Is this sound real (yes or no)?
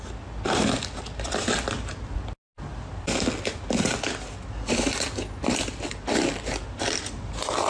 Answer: yes